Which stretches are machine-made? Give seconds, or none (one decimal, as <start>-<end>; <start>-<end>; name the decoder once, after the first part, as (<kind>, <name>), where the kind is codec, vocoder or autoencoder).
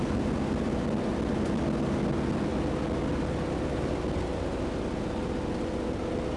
none